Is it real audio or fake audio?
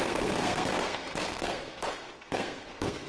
fake